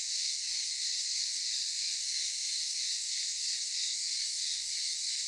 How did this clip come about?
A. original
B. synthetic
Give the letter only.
B